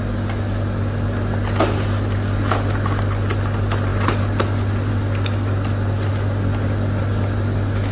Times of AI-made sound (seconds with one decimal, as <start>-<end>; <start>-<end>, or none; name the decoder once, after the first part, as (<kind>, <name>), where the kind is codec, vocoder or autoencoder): none